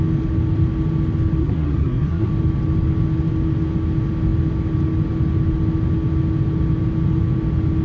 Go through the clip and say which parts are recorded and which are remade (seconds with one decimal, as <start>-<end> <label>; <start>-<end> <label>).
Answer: 0.0-1.4 recorded; 1.4-2.3 remade; 2.3-7.8 recorded

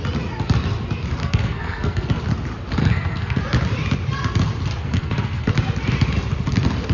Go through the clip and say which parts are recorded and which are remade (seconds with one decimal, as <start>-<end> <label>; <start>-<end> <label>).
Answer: 0.0-1.2 recorded; 1.2-2.2 remade; 2.2-2.8 recorded; 2.8-3.4 remade; 3.4-4.8 recorded; 4.8-5.5 remade; 5.5-6.9 recorded

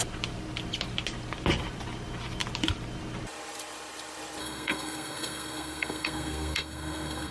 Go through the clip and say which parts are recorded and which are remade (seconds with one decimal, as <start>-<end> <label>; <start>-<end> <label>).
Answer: 0.0-4.4 recorded; 4.4-7.3 remade

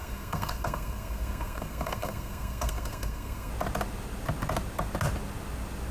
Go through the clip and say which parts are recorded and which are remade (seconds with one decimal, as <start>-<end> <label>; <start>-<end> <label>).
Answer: 0.0-3.5 remade; 3.5-5.9 recorded

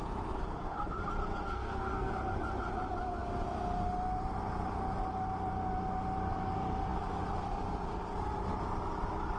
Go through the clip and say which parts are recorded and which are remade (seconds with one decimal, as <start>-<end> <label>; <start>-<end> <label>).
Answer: 0.0-1.5 recorded; 1.5-2.1 remade; 2.1-9.4 recorded